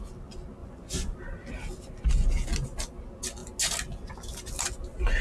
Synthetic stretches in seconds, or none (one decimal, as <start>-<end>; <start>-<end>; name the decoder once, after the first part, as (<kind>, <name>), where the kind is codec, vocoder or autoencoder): 0.6-1.1 (vocoder, Vocos)